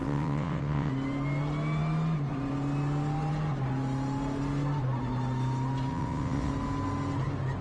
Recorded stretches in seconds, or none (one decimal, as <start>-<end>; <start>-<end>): 0.9-5.9; 6.5-7.6

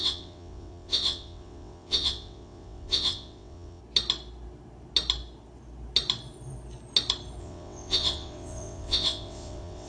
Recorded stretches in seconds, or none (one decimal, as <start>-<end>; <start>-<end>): 3.8-7.4